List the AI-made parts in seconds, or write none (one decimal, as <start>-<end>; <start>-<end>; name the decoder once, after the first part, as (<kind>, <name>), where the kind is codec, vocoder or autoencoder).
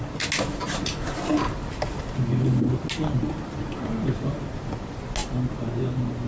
none